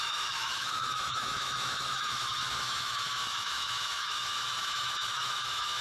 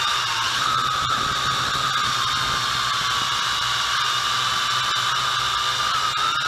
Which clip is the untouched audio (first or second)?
second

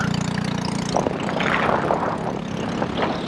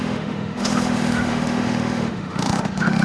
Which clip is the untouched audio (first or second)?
first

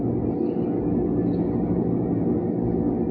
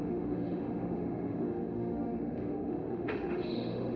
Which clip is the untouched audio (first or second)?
first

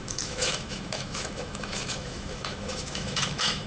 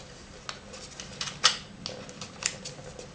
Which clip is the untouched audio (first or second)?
second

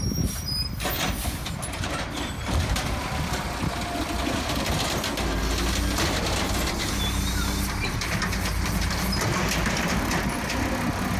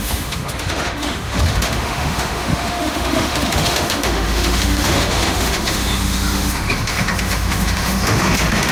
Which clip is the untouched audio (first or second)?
first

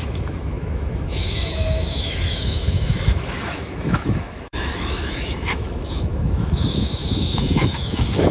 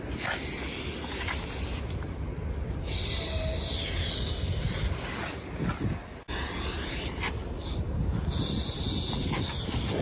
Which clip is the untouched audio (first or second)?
second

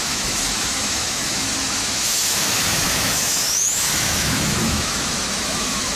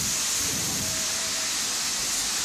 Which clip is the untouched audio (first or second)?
second